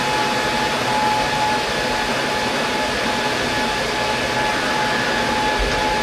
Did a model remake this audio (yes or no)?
no